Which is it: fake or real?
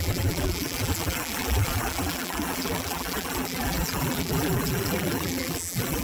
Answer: fake